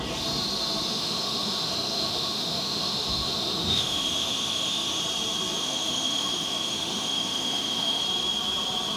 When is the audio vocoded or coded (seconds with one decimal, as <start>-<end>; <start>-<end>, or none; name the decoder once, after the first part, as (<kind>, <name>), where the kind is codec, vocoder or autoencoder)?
0.9-5.0 (autoencoder, DAC-VAE); 5.6-8.0